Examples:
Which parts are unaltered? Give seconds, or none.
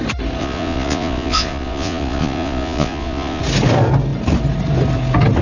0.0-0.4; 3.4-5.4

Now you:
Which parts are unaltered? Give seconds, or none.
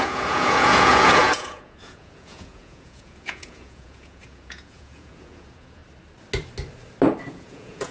5.8-7.3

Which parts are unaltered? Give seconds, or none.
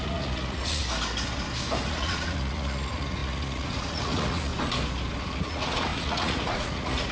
0.8-1.9; 4.5-5.2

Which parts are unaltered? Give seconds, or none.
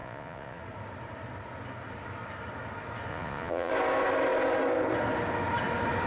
0.6-3.1; 3.7-6.1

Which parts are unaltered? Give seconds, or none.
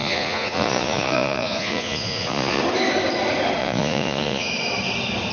2.6-3.6; 4.5-5.3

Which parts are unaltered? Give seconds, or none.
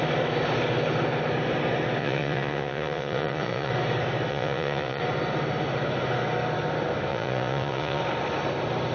0.0-2.0; 3.7-4.3; 5.0-7.1; 8.0-8.9